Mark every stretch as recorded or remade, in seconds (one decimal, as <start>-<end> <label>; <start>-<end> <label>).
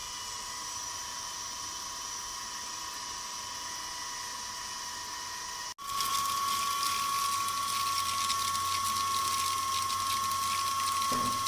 0.0-11.5 recorded